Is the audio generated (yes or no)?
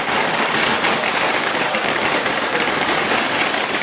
yes